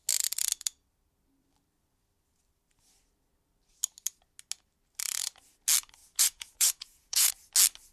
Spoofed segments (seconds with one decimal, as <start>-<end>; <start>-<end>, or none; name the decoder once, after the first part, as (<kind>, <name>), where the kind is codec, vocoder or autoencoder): 6.0-7.3 (vocoder, Vocos)